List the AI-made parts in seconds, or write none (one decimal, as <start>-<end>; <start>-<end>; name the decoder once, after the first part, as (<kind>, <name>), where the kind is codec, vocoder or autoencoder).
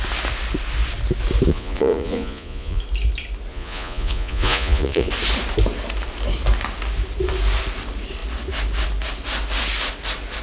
1.5-2.8 (vocoder, Vocos); 3.5-5.1